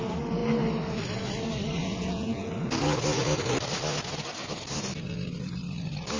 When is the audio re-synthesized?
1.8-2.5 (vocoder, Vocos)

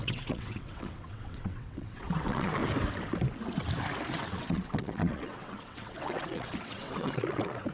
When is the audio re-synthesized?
0.0-2.6 (vocoder, WaveNeXt); 4.1-7.7

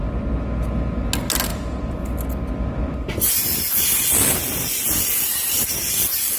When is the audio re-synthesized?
none

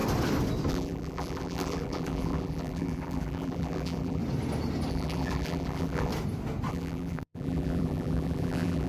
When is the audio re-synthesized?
0.7-4.2 (vocoder, BigVGAN v2); 4.9-6.1; 6.7-8.9

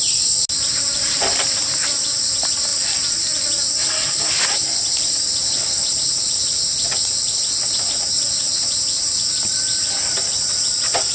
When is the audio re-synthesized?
none

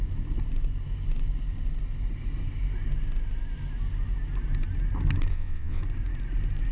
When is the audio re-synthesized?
5.3-5.8 (vocoder, WaveNeXt)